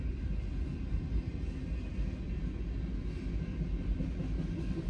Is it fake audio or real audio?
real